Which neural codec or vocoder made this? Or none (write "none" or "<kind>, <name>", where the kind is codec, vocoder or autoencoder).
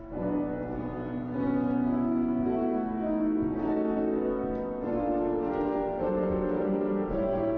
none